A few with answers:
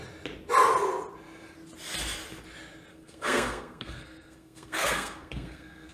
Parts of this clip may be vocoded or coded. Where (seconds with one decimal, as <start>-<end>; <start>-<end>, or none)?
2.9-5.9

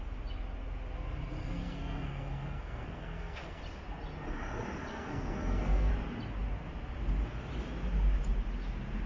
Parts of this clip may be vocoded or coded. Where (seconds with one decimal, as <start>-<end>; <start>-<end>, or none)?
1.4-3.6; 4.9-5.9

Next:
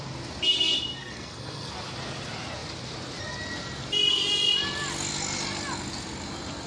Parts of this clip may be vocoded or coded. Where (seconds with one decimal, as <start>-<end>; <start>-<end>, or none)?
1.0-1.7